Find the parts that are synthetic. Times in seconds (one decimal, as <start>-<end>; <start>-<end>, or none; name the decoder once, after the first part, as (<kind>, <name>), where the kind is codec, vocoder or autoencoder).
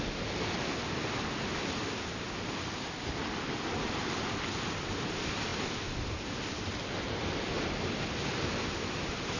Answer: none